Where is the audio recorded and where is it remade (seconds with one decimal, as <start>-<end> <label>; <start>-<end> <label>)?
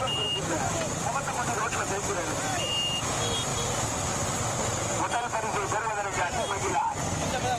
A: 0.0-0.7 remade; 0.7-2.5 recorded; 2.5-3.1 remade; 3.1-7.6 recorded